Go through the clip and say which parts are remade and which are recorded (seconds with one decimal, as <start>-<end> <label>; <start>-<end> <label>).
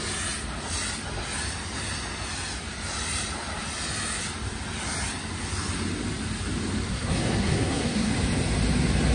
0.0-6.9 recorded; 6.9-8.1 remade; 8.1-9.1 recorded